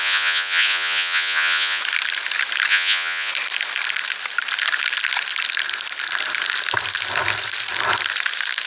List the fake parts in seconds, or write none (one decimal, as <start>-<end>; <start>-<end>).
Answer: 0.0-1.8; 2.7-3.3